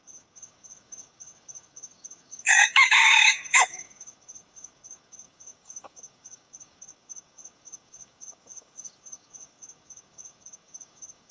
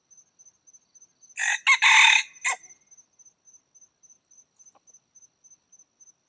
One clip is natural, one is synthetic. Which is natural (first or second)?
second